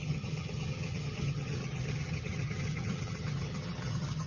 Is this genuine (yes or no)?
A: no